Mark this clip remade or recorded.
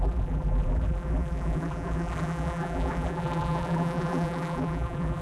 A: remade